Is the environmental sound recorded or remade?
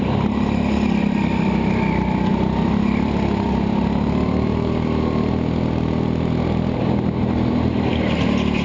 recorded